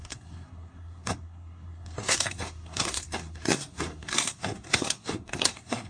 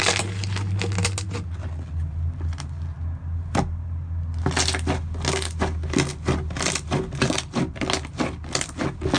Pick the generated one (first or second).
first